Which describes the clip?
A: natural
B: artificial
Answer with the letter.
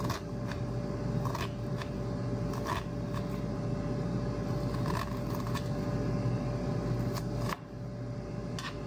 A